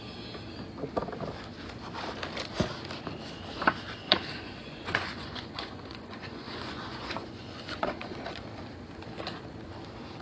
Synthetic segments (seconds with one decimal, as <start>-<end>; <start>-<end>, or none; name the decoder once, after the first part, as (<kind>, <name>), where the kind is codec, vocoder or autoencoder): 4.0-8.4 (vocoder, Vocos)

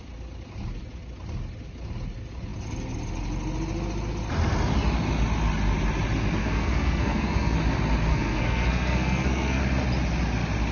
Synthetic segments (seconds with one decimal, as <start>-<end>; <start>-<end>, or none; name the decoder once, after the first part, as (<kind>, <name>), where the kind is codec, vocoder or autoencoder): 6.4-7.6 (codec, SNAC); 8.1-9.6